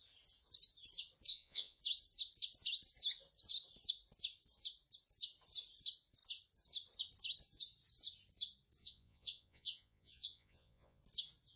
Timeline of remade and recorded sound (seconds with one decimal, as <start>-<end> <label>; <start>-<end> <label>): 0.0-1.3 recorded; 1.3-1.8 remade; 1.8-8.8 recorded; 8.8-11.0 remade; 11.0-11.6 recorded

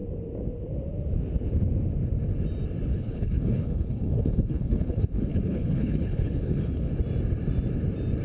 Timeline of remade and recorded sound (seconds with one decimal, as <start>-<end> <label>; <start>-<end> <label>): 0.0-2.9 recorded; 2.9-6.9 remade; 6.9-8.2 recorded

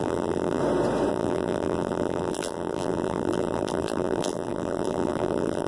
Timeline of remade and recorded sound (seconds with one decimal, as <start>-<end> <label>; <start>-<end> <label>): 0.0-0.6 remade; 0.6-1.1 recorded; 1.1-5.7 remade

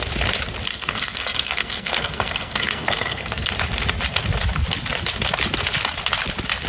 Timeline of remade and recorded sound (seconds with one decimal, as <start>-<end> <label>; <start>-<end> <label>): 0.0-0.7 recorded; 0.7-3.5 remade; 3.5-6.7 recorded

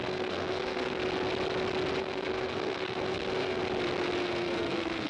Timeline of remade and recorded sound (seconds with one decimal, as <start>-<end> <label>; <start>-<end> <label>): 0.0-1.0 remade; 1.0-2.0 recorded; 2.0-3.6 remade; 3.6-4.2 recorded; 4.2-5.1 remade